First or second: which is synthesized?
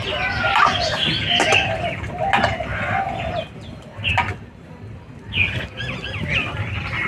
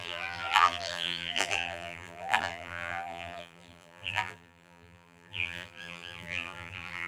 second